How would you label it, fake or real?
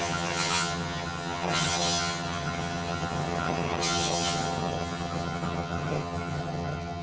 fake